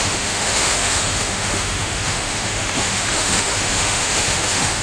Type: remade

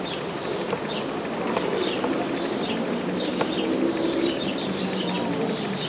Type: recorded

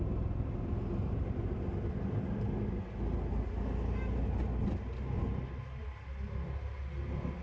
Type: recorded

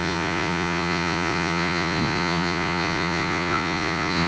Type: remade